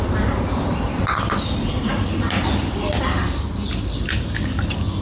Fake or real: real